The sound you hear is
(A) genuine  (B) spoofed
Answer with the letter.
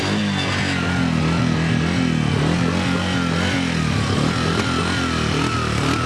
A